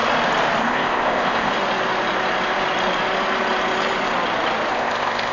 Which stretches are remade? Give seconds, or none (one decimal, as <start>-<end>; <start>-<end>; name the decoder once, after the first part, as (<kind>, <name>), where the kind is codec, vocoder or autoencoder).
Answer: 0.6-1.5 (codec, ZipCodec); 4.7-5.3